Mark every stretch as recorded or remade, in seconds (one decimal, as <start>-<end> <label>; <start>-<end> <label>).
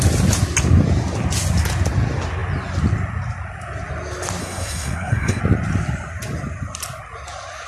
0.0-4.4 recorded; 4.4-5.4 remade; 5.4-7.7 recorded